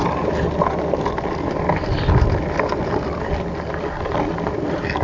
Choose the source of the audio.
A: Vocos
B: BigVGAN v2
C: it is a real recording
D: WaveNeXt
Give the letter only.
C